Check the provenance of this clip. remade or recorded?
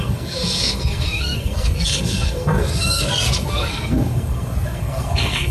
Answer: remade